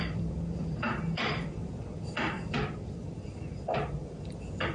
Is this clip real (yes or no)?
no